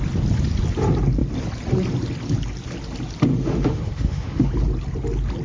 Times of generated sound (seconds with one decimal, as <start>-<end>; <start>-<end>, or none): 3.3-4.5